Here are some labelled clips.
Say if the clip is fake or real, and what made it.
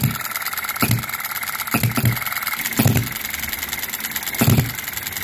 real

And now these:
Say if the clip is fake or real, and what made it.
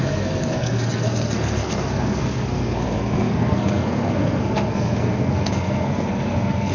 fake, codec, SNAC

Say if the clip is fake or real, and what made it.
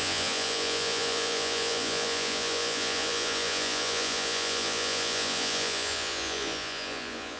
fake, vocoder, Vocos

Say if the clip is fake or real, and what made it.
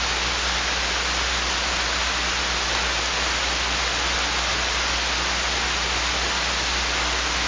real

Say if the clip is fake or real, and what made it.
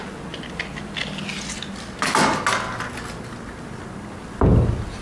real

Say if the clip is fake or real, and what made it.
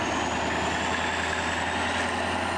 real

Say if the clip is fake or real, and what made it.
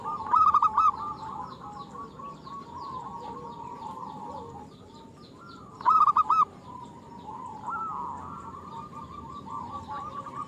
fake, vocoder, BigVGAN v2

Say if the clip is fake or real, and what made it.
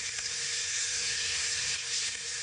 fake, codec, SNAC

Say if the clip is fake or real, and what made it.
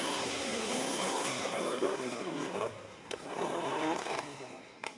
fake, codec, SNAC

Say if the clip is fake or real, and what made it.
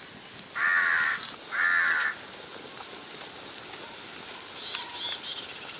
real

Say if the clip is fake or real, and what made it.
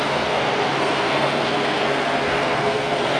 fake, codec, SNAC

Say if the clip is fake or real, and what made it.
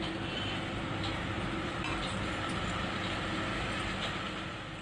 real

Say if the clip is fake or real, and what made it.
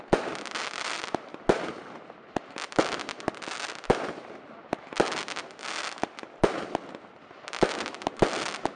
real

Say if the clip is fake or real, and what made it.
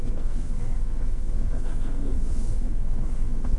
fake, codec, SNAC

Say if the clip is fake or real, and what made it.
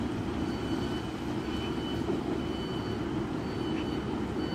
real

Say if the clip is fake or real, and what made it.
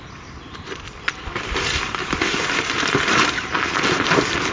real